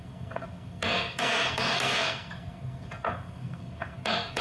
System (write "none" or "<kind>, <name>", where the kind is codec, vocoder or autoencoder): codec, SNAC